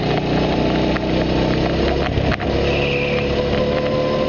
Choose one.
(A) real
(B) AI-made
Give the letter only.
A